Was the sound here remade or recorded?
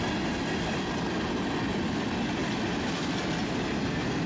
recorded